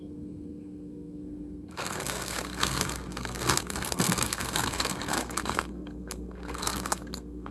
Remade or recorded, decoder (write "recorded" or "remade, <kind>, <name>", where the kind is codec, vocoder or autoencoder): remade, codec, SNAC